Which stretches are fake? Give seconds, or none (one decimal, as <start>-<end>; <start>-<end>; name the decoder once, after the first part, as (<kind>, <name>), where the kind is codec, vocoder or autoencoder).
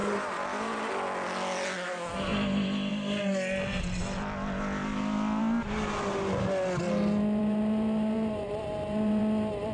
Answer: 0.0-0.9 (vocoder, BigVGAN v2); 7.4-9.2